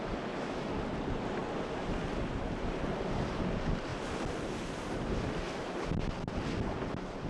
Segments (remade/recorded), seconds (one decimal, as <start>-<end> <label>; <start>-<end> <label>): 0.0-7.3 recorded